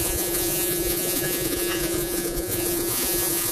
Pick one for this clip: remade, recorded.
remade